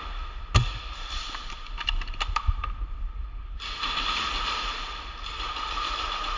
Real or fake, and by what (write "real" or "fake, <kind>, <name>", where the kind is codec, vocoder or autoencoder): real